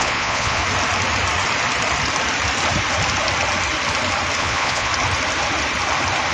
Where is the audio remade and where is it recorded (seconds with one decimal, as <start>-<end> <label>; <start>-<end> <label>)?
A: 0.0-0.6 remade; 0.6-4.4 recorded; 4.4-4.9 remade; 4.9-6.3 recorded